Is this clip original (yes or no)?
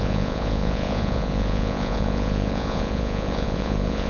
no